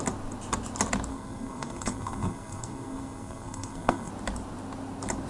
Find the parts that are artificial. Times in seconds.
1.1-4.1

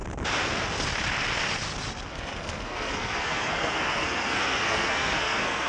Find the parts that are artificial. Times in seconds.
2.1-5.7

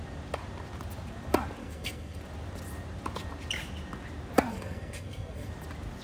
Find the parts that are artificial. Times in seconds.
1.6-2.2; 4.5-5.5

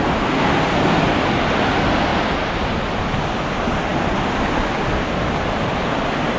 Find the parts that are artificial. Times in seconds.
none

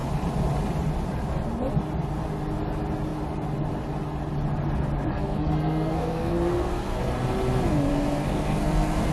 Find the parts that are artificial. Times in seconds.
5.1-7.0; 7.9-9.1

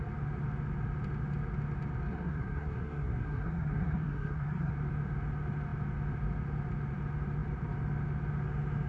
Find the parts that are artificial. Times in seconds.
2.1-4.7

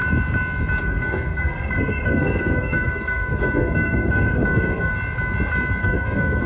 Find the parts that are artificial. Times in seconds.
0.8-4.9; 5.8-6.5

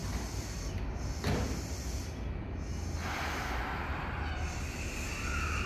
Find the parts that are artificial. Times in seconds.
none